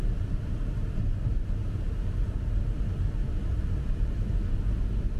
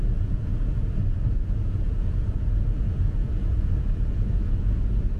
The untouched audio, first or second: first